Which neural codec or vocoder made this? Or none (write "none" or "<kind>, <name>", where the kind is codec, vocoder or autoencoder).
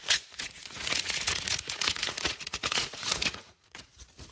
vocoder, Vocos